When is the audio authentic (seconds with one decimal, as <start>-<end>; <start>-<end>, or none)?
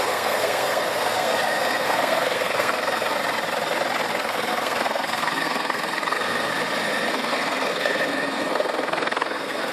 3.2-4.1; 6.5-7.1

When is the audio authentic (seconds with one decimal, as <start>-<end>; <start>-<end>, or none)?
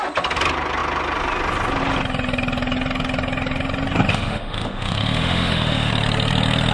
0.0-4.1; 5.9-6.7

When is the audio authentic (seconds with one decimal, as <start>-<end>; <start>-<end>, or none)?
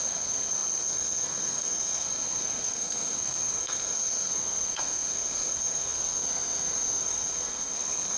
none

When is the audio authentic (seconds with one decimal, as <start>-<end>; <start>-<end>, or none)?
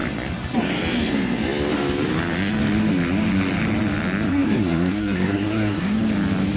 0.0-4.3; 6.0-6.6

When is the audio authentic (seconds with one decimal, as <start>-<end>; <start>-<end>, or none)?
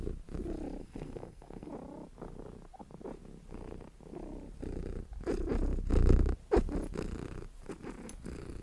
0.0-0.8; 1.7-8.6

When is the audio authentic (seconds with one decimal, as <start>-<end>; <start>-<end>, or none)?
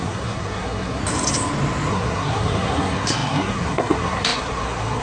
1.0-1.9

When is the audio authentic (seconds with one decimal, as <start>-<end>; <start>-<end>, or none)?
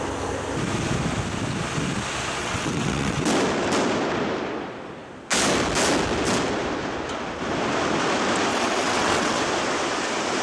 0.0-2.4; 3.2-8.5; 9.4-10.4